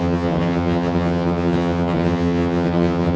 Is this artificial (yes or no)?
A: yes